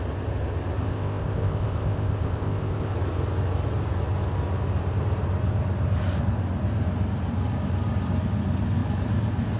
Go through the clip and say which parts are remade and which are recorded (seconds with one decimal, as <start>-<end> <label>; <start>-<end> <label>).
0.0-0.8 recorded; 0.8-2.9 remade; 2.9-9.6 recorded